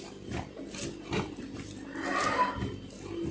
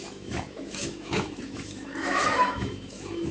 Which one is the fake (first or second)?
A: second